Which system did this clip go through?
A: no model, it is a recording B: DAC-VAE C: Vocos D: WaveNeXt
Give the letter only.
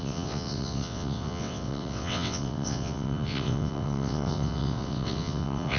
D